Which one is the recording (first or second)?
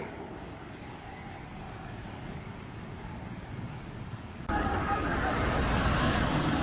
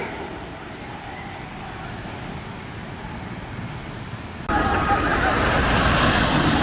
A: second